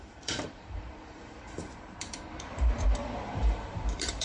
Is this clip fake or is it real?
fake